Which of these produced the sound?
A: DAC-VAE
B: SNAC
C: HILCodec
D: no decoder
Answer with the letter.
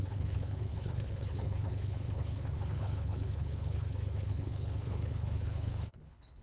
C